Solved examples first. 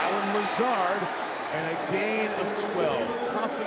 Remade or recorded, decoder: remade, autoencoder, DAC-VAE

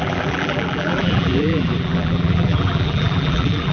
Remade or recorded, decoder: remade, vocoder, BigVGAN v2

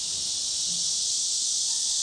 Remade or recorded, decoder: recorded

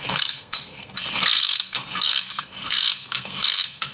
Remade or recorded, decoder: remade, codec, SNAC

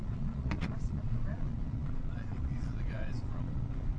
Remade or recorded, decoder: remade, vocoder, Vocos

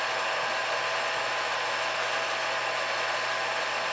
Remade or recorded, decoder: recorded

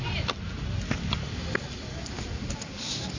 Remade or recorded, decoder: recorded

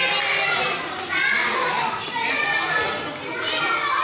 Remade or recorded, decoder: recorded